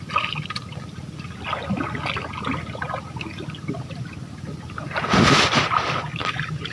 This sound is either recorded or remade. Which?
recorded